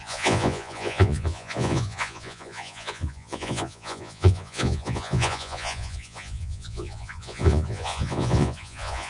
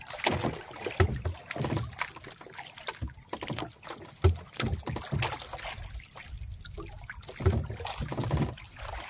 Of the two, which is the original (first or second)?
second